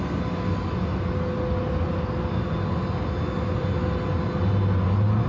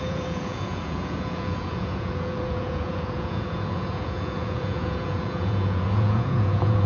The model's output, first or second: second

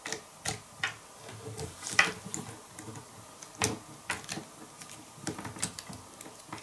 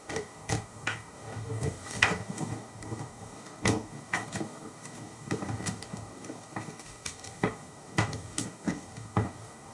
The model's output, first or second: second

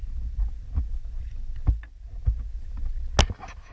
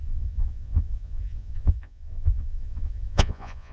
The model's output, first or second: second